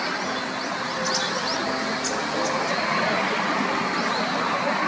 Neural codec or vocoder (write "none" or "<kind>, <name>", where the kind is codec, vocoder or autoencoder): none